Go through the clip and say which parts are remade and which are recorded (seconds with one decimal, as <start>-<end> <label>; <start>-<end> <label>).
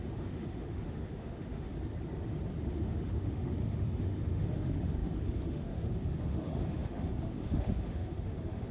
0.0-1.7 remade; 1.7-2.6 recorded; 2.6-8.7 remade